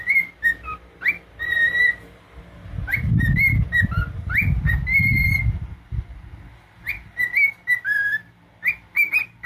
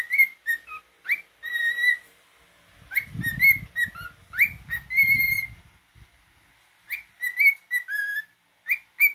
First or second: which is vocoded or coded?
first